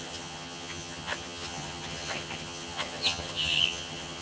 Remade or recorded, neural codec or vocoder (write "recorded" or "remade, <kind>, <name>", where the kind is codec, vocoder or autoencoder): remade, vocoder, HiFi-GAN